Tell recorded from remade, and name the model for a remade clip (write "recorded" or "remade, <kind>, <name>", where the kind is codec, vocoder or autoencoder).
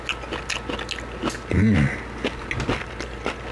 recorded